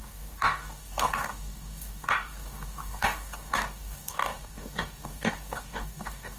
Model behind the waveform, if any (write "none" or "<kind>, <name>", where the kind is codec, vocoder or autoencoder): codec, DAC